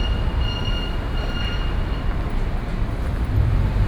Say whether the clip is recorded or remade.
recorded